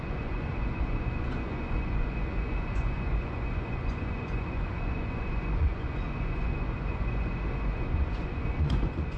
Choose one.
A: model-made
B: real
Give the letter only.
A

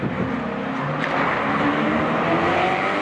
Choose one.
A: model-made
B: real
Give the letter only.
B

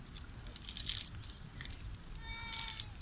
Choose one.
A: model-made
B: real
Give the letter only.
B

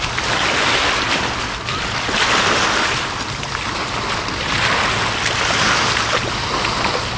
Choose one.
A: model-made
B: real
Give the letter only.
B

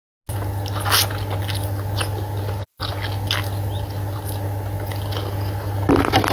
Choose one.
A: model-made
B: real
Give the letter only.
B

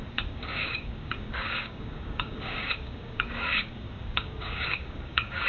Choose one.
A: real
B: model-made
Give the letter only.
B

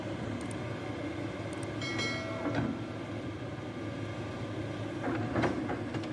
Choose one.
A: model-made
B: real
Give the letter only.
B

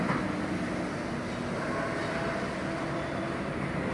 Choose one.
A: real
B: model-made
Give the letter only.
A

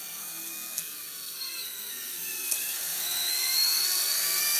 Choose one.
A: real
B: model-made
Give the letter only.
B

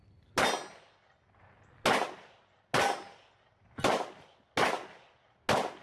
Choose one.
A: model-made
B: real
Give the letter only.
B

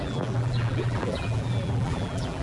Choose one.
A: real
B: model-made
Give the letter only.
B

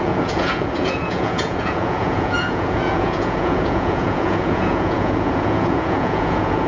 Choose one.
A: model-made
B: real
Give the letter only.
A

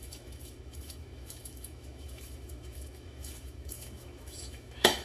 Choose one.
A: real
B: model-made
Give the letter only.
B